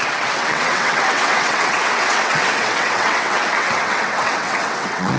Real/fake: fake